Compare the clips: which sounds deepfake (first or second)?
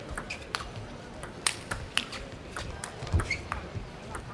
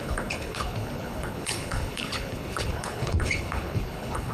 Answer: second